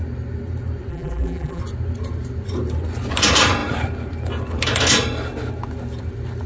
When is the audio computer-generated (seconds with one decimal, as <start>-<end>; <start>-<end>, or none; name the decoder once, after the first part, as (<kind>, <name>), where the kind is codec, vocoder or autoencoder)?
0.9-1.6 (vocoder, BigVGAN v2)